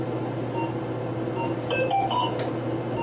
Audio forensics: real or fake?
real